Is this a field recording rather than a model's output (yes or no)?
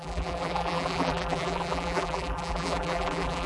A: no